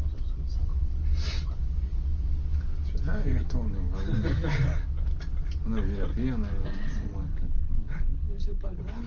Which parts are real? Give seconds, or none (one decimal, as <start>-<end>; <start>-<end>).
0.0-7.3